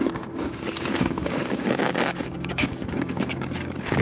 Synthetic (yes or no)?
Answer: yes